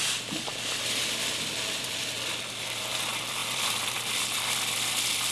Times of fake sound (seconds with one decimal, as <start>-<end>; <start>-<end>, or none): 0.0-0.5; 1.1-5.3